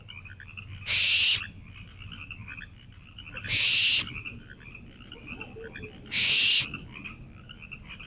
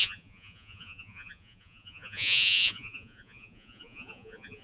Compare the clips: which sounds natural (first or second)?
first